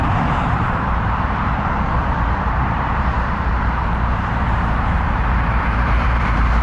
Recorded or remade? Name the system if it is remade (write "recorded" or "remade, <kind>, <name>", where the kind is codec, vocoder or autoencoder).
remade, vocoder, BigVGAN v2